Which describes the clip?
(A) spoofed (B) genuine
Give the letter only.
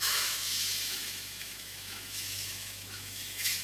A